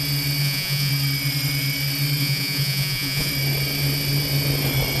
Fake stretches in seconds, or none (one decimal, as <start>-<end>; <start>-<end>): 0.4-0.9; 2.2-3.3